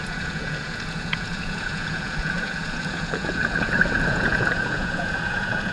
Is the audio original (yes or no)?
no